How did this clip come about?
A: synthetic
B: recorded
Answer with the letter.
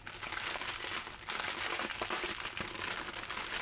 B